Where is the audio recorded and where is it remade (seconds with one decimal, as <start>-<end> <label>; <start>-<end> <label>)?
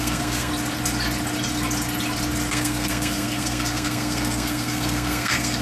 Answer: 0.0-0.5 remade; 0.5-2.5 recorded; 2.5-5.6 remade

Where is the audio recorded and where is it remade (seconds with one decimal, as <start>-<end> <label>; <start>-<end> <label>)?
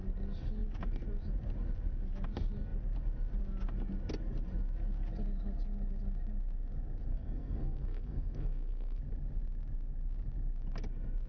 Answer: 0.0-7.1 recorded; 7.1-9.0 remade; 9.0-11.3 recorded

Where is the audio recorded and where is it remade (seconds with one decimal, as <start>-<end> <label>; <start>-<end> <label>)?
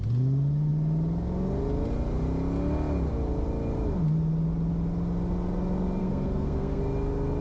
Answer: 0.0-6.0 recorded; 6.0-6.8 remade; 6.8-7.4 recorded